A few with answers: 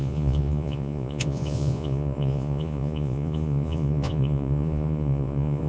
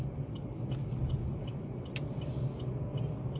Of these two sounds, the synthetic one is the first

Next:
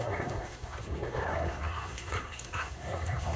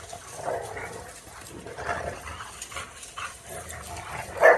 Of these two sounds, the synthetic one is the first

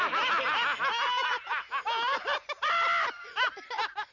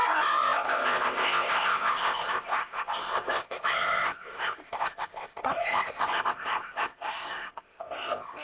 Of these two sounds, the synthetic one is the second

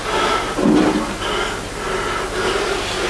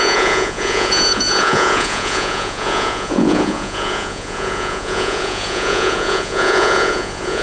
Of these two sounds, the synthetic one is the second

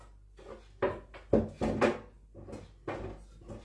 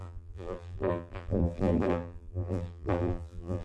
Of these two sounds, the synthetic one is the second